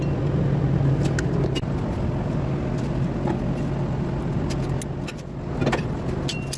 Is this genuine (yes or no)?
yes